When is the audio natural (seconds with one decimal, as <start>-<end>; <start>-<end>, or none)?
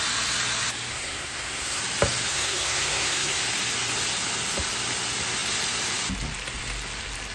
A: 0.0-0.9; 1.8-2.3; 3.4-7.3